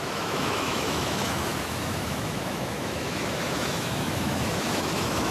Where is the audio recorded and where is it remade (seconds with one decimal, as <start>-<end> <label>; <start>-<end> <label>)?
0.0-5.3 remade